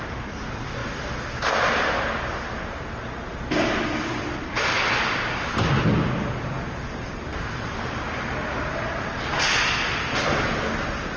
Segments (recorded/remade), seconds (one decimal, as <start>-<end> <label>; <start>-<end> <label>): 0.0-11.2 recorded

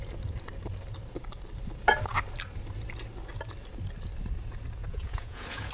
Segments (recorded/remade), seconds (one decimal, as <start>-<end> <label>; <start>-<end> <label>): 0.0-4.8 recorded; 4.8-5.7 remade

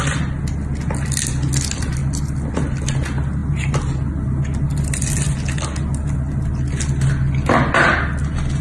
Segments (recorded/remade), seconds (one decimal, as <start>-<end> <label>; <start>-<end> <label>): 0.0-8.6 recorded

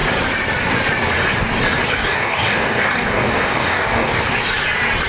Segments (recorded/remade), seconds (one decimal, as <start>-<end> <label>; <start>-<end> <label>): 0.0-1.9 recorded; 1.9-4.2 remade; 4.2-5.1 recorded

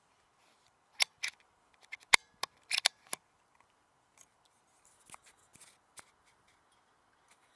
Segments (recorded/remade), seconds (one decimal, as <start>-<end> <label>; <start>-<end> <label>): 0.0-7.6 recorded

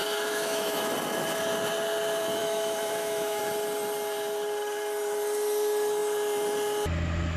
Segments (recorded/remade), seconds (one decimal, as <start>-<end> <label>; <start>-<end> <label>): 0.0-0.9 remade; 0.9-2.4 recorded; 2.4-3.4 remade; 3.4-7.4 recorded

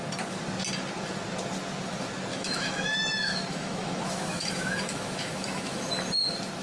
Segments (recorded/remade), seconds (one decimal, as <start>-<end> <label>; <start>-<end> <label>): 0.0-2.3 recorded; 2.3-5.9 remade; 5.9-6.6 recorded